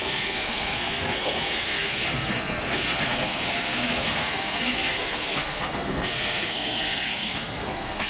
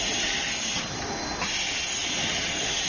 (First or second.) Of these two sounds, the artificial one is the first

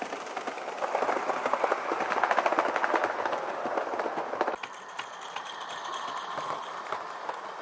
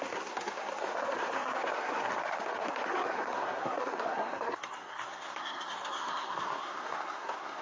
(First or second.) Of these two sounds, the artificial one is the second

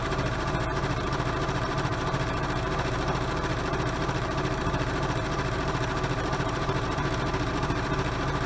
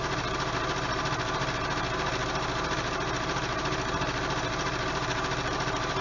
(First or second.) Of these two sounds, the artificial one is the first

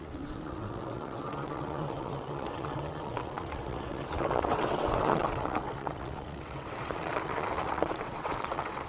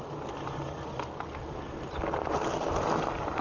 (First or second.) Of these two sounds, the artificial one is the first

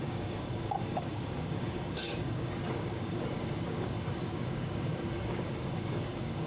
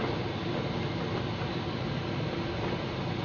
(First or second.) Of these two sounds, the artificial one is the first